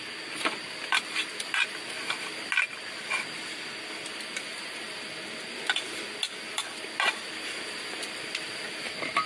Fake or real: real